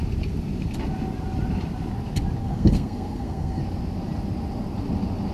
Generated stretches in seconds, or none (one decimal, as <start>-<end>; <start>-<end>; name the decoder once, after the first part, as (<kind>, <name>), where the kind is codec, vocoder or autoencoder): 2.4-3.6 (codec, SNAC)